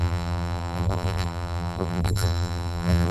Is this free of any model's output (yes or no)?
no